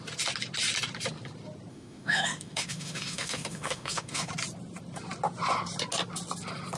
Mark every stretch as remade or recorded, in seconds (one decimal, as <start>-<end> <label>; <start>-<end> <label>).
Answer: 0.0-1.7 recorded; 1.7-4.3 remade; 4.3-6.8 recorded